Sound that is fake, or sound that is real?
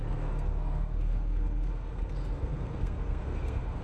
fake